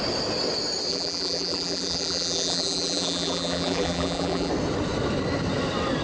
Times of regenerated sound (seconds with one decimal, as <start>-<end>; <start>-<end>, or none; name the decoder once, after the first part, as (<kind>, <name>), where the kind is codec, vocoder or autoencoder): 0.9-4.5 (vocoder, BigVGAN v2)